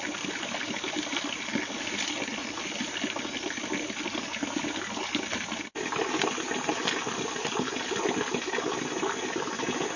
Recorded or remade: recorded